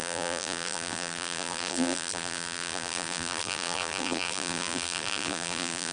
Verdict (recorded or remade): remade